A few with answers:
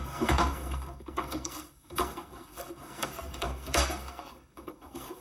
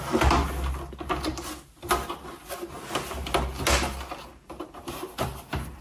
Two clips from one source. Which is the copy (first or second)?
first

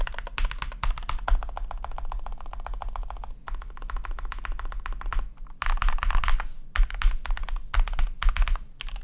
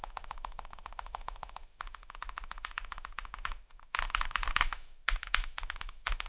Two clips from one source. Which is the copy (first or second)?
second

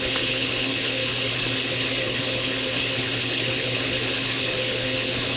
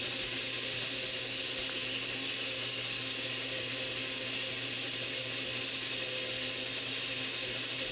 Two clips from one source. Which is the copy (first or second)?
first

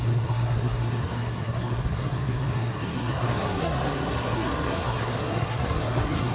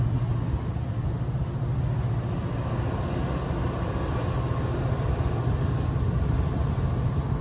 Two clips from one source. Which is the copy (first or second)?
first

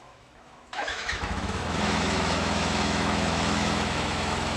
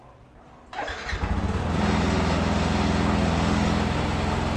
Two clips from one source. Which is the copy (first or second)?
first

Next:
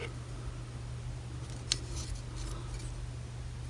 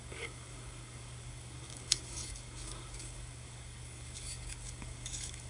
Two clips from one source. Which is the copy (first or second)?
second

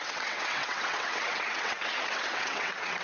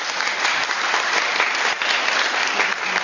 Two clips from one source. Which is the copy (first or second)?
first